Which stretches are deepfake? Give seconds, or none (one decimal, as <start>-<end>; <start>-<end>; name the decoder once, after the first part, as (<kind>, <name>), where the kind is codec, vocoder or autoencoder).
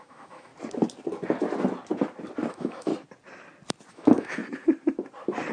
0.0-0.5 (autoencoder, DAC-VAE); 2.5-2.9; 3.9-4.4